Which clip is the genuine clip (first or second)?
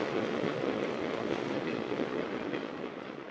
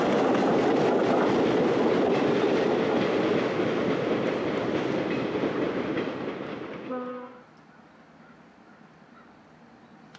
second